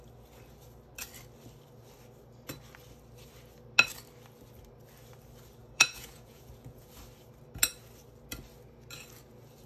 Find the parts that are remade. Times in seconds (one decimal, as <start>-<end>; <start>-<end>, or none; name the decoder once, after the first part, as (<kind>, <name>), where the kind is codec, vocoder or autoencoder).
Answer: 5.6-6.9 (vocoder, Vocos)